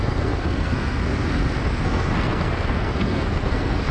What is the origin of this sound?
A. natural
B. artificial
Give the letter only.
B